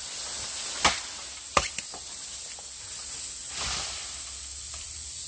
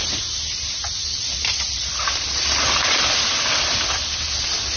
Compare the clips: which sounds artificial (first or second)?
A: second